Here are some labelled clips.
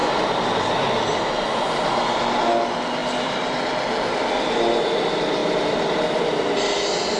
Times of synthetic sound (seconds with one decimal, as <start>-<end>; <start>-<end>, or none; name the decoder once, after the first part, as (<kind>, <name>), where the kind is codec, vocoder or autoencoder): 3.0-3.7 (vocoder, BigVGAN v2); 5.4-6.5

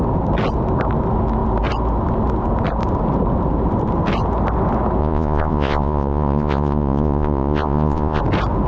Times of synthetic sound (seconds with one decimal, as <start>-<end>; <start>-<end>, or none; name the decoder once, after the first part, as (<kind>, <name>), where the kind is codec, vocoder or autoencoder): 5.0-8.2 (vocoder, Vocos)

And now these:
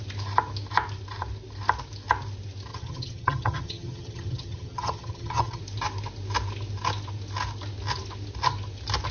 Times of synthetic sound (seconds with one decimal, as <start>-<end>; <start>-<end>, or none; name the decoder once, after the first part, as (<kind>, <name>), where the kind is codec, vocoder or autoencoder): 2.7-5.6 (vocoder, HiFi-GAN)

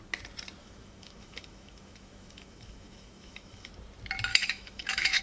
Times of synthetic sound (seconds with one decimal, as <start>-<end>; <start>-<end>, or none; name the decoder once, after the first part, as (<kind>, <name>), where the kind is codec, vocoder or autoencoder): 0.6-3.7 (autoencoder, DAC-VAE); 4.3-5.2

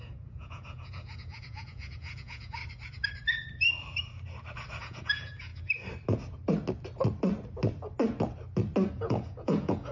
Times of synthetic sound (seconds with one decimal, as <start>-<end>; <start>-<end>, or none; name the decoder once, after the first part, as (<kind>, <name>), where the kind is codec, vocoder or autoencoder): 0.0-2.6 (vocoder, Vocos); 4.8-5.5; 8.9-9.9

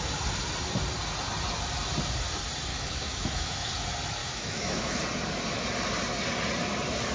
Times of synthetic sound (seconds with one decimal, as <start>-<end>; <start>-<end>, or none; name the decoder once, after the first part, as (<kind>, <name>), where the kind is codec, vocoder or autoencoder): 2.7-3.7 (autoencoder, DAC-VAE); 4.2-5.0